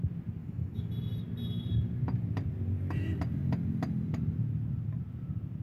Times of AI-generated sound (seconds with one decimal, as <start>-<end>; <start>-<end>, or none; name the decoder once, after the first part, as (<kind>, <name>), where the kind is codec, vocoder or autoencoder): 0.4-0.9 (autoencoder, DAC-VAE)